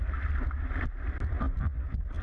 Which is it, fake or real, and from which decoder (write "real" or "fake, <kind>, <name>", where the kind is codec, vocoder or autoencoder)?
real